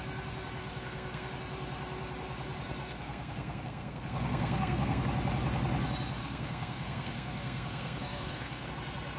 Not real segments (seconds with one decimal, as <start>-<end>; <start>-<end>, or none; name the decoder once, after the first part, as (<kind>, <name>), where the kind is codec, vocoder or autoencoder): 0.6-1.3 (codec, SNAC); 2.8-5.0; 6.2-8.7